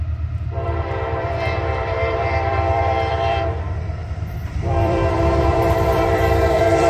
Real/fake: fake